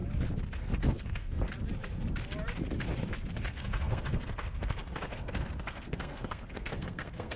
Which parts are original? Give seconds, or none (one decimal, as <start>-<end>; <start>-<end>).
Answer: 0.0-0.6; 1.5-3.5